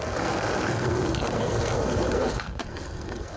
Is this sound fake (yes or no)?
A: yes